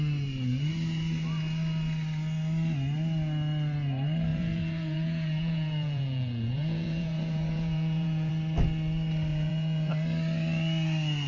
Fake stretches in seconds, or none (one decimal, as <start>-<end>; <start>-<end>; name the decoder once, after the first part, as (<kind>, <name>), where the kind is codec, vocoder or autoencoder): 4.3-8.3 (vocoder, Vocos); 9.3-9.9